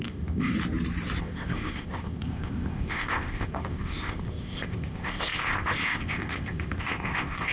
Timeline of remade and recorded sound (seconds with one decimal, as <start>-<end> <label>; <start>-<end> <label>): 0.0-0.5 remade; 0.5-1.2 recorded; 1.2-7.5 remade